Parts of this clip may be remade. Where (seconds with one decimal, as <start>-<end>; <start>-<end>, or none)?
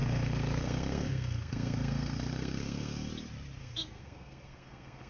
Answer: 0.0-3.1; 3.6-5.1